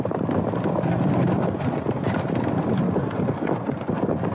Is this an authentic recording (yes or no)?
yes